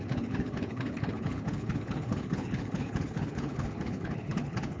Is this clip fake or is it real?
fake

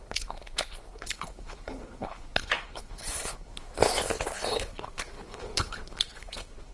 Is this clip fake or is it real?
fake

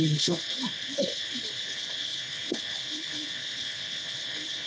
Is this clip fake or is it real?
fake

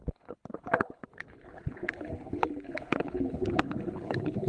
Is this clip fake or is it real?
fake